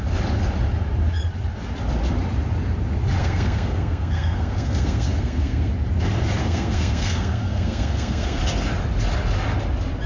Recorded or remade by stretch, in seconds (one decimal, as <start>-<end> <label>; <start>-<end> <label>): 0.0-3.2 recorded; 3.2-5.7 remade; 5.7-6.4 recorded; 6.4-8.4 remade; 8.4-10.1 recorded